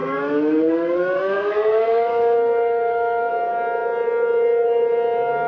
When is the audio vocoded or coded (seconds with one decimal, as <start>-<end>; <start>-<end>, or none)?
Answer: 0.0-3.3